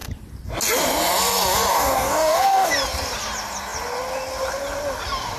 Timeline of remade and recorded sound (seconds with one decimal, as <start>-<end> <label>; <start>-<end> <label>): 0.0-1.7 recorded; 1.7-2.7 remade; 2.7-5.4 recorded